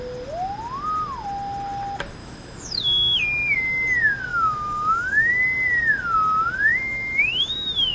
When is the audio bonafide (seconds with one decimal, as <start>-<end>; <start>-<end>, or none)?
0.0-2.2; 3.2-4.3; 5.4-6.7

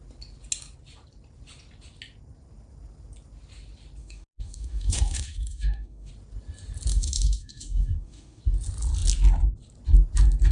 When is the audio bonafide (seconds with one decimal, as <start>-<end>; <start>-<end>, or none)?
0.0-4.0; 6.1-6.9; 8.4-10.5

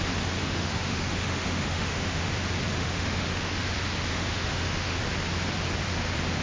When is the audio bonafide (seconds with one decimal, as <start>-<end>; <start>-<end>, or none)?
0.0-0.4; 2.3-2.8; 3.6-4.1; 5.0-6.4

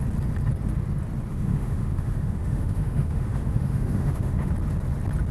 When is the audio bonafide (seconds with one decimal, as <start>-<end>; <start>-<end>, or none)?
0.0-1.3; 4.5-5.3

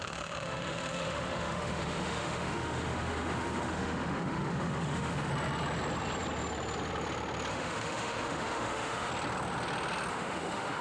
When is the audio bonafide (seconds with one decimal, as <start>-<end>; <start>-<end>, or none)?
5.3-7.5; 9.1-10.1

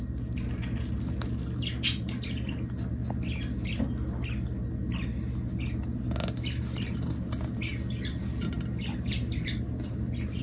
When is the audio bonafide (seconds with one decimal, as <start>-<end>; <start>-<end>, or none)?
0.0-10.4

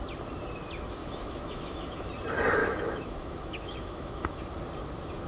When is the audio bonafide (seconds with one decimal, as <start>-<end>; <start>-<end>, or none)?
0.0-1.0; 2.1-2.6; 4.4-5.3